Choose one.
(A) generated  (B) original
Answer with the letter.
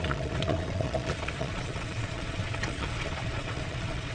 A